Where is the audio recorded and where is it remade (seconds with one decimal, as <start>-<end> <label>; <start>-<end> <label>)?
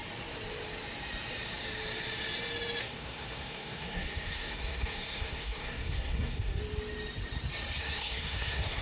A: 0.0-2.8 recorded; 2.8-6.6 remade; 6.6-7.8 recorded; 7.8-8.8 remade